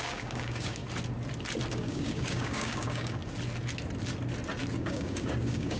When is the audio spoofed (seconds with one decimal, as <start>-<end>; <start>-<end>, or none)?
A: 0.0-0.8; 1.7-3.2; 4.7-5.8